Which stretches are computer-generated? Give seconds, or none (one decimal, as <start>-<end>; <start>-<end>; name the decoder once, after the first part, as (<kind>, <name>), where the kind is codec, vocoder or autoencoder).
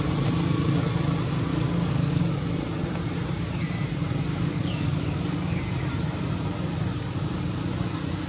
1.5-2.2 (codec, DAC); 4.3-5.6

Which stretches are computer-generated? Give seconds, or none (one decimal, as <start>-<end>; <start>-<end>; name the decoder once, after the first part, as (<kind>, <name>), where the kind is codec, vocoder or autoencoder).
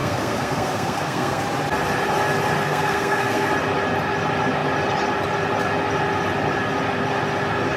0.0-1.4 (codec, SNAC); 2.6-3.5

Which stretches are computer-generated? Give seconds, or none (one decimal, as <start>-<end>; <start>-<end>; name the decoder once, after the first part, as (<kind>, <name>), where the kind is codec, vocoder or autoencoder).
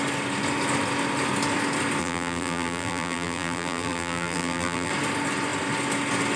2.0-4.9 (vocoder, BigVGAN v2)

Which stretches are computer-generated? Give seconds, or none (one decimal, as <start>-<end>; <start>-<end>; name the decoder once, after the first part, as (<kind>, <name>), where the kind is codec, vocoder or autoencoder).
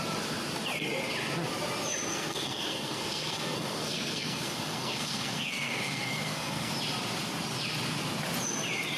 2.1-6.7 (codec, SNAC)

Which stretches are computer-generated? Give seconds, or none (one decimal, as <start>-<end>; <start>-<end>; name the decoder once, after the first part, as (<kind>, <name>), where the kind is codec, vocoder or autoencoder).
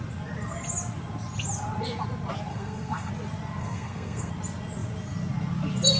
2.5-3.1 (codec, SNAC); 3.6-4.3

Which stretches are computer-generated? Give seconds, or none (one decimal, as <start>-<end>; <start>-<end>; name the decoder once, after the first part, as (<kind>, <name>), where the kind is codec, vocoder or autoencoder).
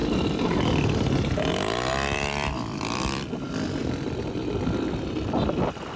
0.0-0.9 (vocoder, BigVGAN v2); 1.5-3.3; 3.8-4.4